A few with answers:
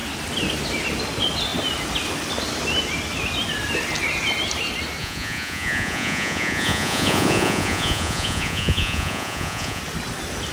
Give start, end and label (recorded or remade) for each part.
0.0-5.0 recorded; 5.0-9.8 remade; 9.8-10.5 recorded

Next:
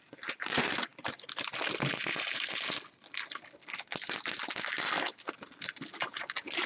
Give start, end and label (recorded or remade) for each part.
0.0-6.7 recorded

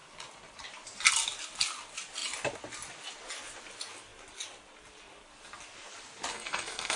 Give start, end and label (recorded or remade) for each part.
0.0-6.3 recorded; 6.3-7.0 remade

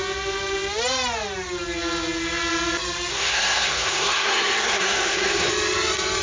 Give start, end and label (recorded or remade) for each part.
0.0-3.1 recorded; 3.1-5.5 remade; 5.5-6.2 recorded

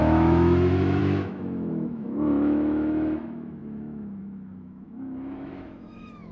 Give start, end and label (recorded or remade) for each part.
0.0-6.3 remade

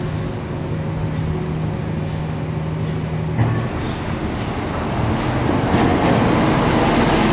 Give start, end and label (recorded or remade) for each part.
0.0-7.3 recorded

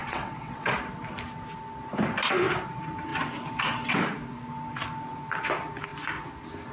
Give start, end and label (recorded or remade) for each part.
0.0-0.7 remade; 0.7-6.7 recorded